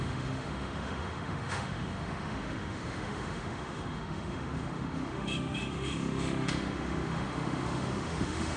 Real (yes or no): no